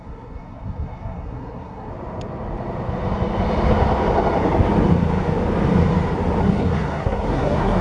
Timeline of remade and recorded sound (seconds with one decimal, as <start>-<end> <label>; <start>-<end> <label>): 0.0-1.9 remade; 1.9-6.4 recorded; 6.4-7.8 remade